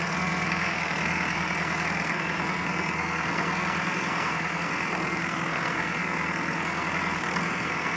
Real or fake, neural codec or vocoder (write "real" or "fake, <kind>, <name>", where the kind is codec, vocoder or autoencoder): fake, codec, SNAC